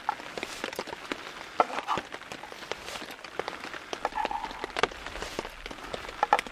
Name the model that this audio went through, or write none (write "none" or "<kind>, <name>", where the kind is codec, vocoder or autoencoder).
none